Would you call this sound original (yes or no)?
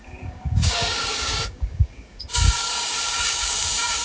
no